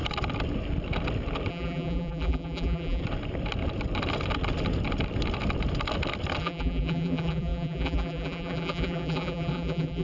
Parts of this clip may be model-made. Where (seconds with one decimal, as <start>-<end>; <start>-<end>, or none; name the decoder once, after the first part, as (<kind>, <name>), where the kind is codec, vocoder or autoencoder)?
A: 1.5-3.0 (vocoder, BigVGAN v2); 6.4-10.0